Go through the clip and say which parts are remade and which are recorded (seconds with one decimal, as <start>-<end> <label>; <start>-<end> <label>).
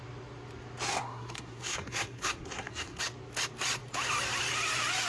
0.0-0.9 recorded; 0.9-3.0 remade; 3.0-5.1 recorded